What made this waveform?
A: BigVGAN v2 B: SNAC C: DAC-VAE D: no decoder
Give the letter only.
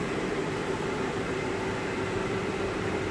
D